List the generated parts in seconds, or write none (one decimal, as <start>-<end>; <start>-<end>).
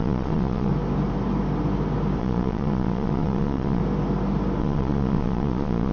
0.0-0.7; 2.2-3.8; 4.6-5.9